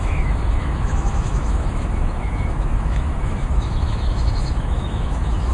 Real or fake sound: fake